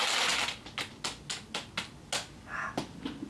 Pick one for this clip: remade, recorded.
recorded